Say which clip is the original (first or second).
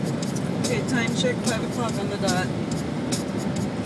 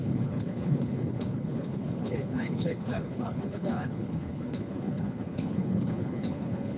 first